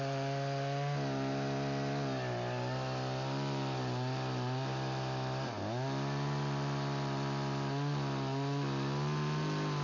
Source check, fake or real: real